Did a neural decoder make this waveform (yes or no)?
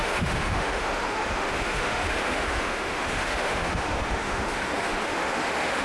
yes